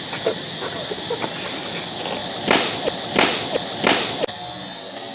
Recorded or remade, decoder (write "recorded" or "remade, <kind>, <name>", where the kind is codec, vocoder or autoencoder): recorded